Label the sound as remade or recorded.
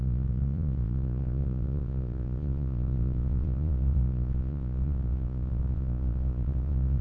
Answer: remade